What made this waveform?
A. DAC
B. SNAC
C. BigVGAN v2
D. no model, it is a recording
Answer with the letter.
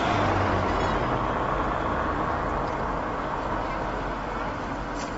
D